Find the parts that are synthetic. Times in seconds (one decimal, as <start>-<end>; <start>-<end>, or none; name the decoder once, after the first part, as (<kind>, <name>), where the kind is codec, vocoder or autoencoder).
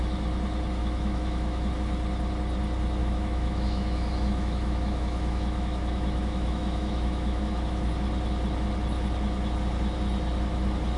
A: 0.8-1.7 (autoencoder, DAC-VAE); 3.0-7.9